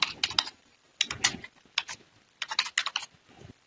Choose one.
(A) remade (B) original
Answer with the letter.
B